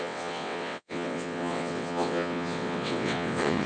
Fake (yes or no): yes